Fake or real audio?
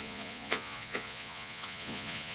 fake